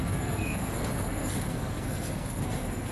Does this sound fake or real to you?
fake